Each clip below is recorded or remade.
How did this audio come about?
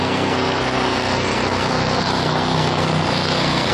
remade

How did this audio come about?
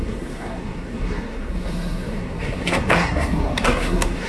remade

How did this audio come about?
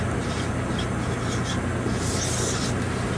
recorded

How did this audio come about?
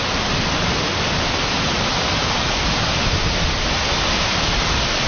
recorded